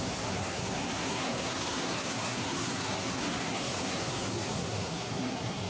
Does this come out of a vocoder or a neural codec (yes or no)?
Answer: yes